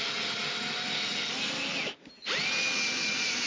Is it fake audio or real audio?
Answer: real